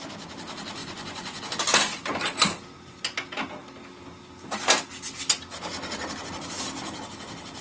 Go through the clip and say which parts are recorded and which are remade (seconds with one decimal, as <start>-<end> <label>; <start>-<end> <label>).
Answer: 0.0-0.8 recorded; 0.8-1.5 remade; 1.5-7.6 recorded